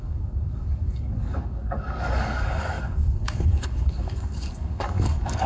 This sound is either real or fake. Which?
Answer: fake